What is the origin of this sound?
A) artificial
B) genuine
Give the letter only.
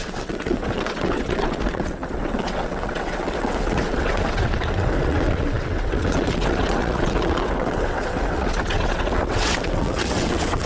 A